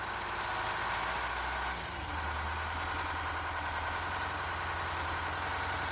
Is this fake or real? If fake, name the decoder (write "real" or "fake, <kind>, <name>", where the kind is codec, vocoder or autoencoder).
real